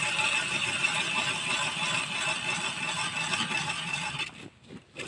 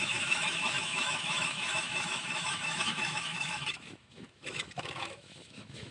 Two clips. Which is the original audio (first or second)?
first